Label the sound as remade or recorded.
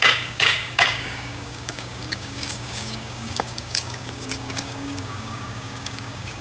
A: remade